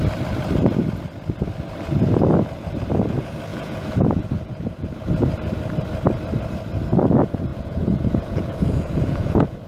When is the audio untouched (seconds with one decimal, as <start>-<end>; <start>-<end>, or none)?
0.0-3.5; 5.0-7.5